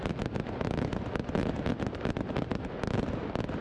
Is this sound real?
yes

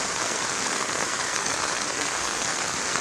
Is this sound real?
no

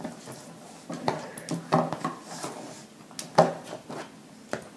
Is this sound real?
yes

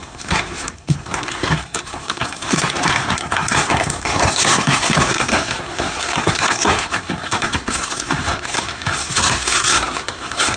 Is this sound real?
no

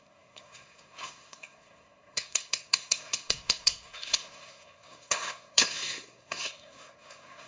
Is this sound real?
no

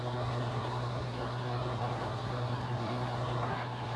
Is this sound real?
no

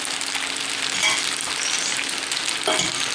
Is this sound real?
yes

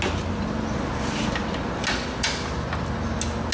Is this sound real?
yes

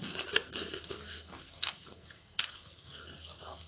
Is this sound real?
no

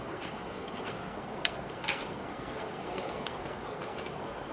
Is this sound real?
no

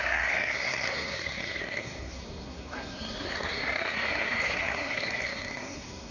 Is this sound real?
no